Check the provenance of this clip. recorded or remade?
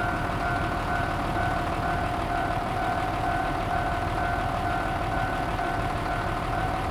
remade